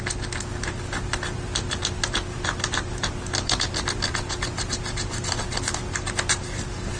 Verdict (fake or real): real